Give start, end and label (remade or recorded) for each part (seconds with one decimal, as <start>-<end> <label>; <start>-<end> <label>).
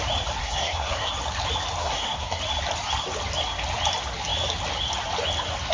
0.0-0.4 recorded; 0.4-1.1 remade; 1.1-1.8 recorded; 1.8-2.4 remade; 2.4-5.7 recorded